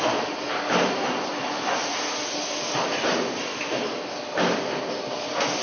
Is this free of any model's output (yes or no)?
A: yes